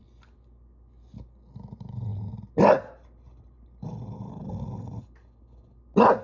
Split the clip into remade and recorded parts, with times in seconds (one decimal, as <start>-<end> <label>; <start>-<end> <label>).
0.0-6.2 recorded

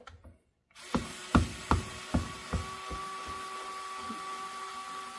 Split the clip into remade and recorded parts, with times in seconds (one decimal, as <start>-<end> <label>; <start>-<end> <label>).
0.0-5.2 recorded